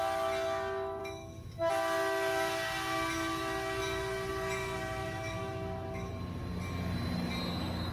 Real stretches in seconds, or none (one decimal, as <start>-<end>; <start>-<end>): 0.0-1.0; 1.7-5.0; 6.1-7.9